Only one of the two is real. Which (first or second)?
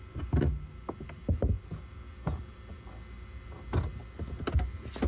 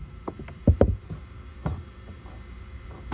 first